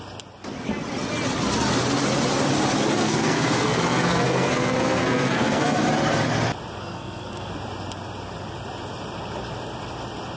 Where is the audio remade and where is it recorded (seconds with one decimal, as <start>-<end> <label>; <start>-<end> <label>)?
0.0-3.0 recorded; 3.0-5.8 remade; 5.8-6.8 recorded; 6.8-7.5 remade; 7.5-10.4 recorded